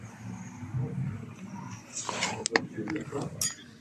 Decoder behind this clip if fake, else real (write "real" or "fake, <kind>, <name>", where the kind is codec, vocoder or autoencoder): real